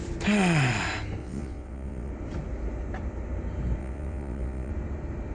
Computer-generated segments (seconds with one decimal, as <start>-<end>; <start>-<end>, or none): 1.2-2.1; 3.8-4.7